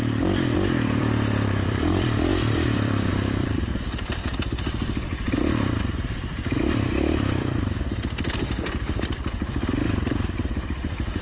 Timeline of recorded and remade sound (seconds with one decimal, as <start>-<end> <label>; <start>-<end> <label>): 0.0-3.7 remade; 3.7-6.7 recorded; 6.7-11.2 remade